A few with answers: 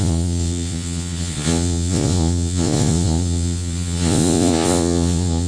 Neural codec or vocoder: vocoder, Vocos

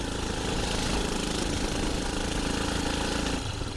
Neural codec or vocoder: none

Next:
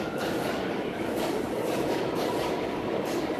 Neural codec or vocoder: codec, DAC